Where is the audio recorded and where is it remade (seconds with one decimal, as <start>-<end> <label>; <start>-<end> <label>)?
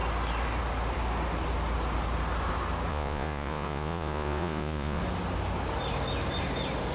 0.0-2.9 recorded; 2.9-5.0 remade; 5.0-6.9 recorded